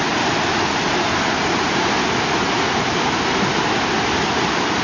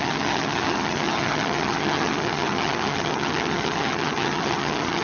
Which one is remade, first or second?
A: second